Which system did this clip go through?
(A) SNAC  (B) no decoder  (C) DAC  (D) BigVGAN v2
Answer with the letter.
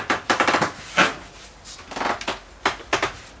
B